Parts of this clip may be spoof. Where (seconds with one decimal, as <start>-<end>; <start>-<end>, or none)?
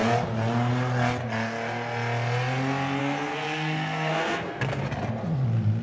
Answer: 3.0-4.8